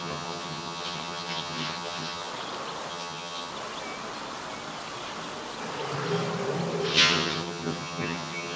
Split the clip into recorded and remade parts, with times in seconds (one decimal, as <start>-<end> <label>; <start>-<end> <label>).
0.0-2.3 remade; 2.3-2.9 recorded; 2.9-3.5 remade; 3.5-6.9 recorded; 6.9-8.6 remade